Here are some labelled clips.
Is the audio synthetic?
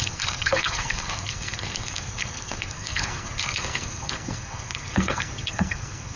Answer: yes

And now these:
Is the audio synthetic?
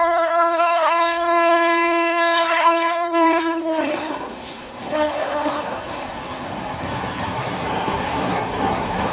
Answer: yes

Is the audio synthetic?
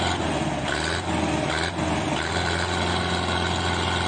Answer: no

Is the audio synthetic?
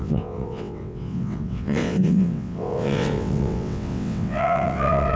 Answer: yes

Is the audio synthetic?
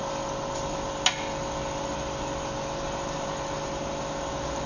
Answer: no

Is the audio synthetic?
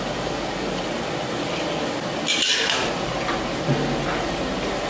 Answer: no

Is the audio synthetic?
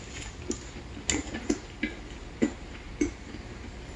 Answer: no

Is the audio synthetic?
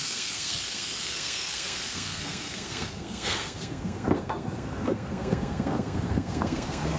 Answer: yes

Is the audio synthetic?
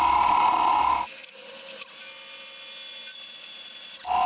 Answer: no